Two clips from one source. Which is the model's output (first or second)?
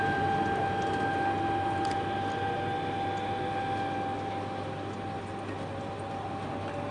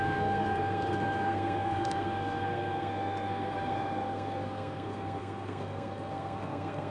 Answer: second